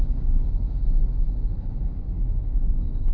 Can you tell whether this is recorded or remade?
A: remade